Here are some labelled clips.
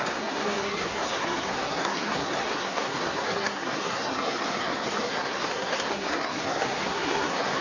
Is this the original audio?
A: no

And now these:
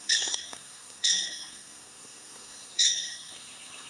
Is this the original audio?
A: no